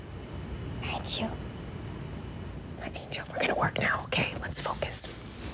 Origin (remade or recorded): recorded